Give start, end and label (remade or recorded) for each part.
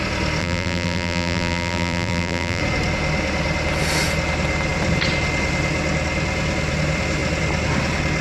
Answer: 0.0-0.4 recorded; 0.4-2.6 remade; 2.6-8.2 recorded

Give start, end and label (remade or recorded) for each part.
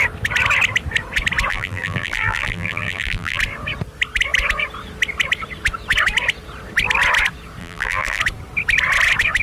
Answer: 0.0-1.5 recorded; 1.5-3.4 remade; 3.4-7.6 recorded; 7.6-8.2 remade; 8.2-9.4 recorded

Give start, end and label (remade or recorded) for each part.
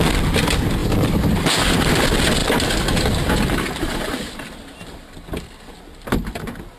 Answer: 0.0-0.8 recorded; 0.8-1.9 remade; 1.9-2.4 recorded; 2.4-4.7 remade; 4.7-6.8 recorded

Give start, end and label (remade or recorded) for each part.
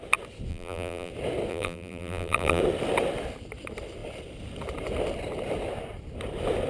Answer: 0.0-0.5 recorded; 0.5-1.1 remade; 1.1-1.5 recorded; 1.5-2.6 remade; 2.6-6.7 recorded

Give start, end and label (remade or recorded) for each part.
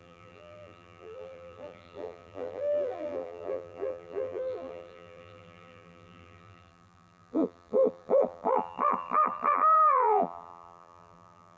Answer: 0.0-11.6 remade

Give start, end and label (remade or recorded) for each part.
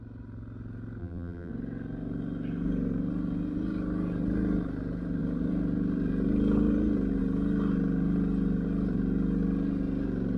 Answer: 0.0-1.0 recorded; 1.0-1.5 remade; 1.5-10.4 recorded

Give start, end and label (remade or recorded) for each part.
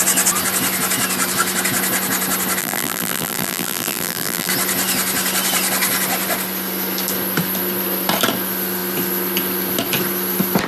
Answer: 0.0-2.6 recorded; 2.6-4.5 remade; 4.5-10.7 recorded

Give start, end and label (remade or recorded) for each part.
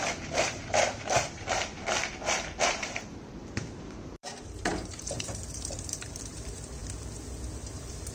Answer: 0.0-1.7 remade; 1.7-2.5 recorded; 2.5-6.8 remade; 6.8-7.5 recorded; 7.5-8.1 remade